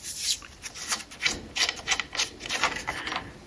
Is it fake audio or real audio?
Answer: real